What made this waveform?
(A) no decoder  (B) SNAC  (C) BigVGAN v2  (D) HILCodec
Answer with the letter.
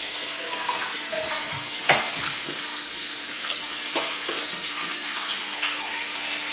B